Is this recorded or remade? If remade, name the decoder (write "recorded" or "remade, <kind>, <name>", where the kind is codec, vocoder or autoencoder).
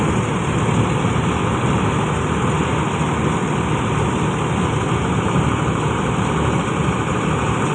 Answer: recorded